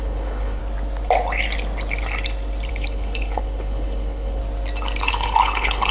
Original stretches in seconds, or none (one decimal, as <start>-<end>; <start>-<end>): 0.6-2.7; 4.4-5.0